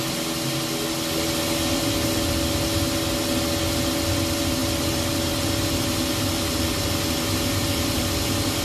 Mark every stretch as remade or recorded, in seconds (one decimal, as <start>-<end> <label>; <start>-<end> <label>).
0.0-8.6 recorded